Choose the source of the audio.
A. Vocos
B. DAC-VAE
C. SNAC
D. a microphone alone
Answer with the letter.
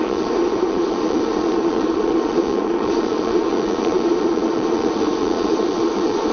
A